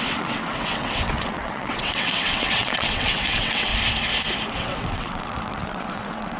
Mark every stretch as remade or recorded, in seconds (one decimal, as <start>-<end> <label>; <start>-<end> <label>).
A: 0.0-3.7 remade; 3.7-4.5 recorded; 4.5-6.4 remade